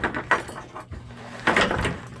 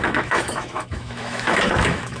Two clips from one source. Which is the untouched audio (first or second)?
first